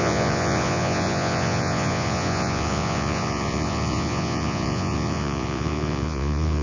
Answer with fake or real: fake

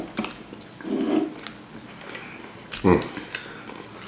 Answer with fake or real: real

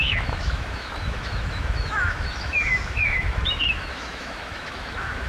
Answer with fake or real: fake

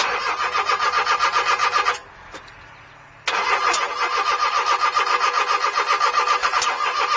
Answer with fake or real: real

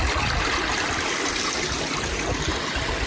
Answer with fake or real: real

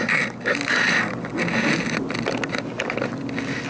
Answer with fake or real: real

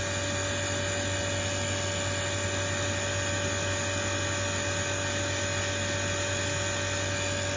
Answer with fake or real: real